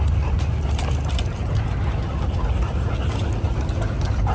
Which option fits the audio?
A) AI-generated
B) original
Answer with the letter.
B